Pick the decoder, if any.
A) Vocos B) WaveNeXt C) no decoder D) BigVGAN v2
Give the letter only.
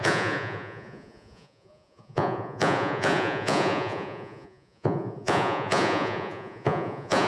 A